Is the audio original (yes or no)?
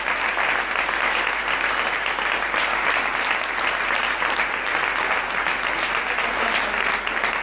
yes